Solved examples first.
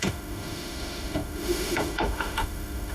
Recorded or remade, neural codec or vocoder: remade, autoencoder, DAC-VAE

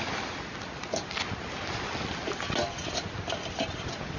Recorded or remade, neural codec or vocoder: recorded